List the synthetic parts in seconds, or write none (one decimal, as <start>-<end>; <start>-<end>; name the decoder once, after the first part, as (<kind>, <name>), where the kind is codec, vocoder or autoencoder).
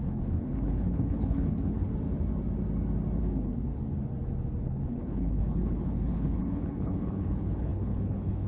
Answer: 0.0-1.9 (codec, HILCodec); 3.2-3.7; 4.6-8.5